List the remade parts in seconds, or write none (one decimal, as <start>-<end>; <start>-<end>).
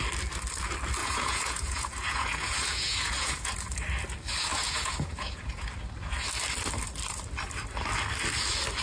1.0-3.5; 4.5-5.7